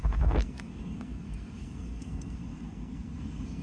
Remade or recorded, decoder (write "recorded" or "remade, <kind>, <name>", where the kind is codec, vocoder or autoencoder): remade, codec, SNAC